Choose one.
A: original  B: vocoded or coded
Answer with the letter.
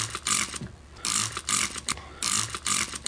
A